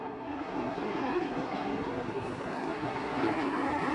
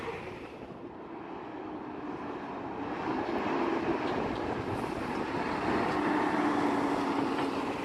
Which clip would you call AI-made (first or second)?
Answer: first